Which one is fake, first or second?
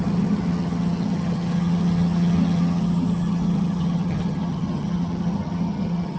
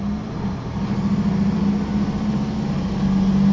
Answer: first